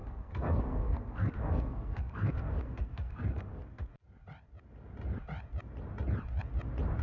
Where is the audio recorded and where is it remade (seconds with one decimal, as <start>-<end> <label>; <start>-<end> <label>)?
0.0-3.9 remade; 3.9-7.0 recorded